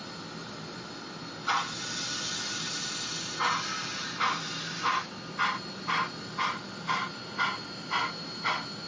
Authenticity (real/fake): real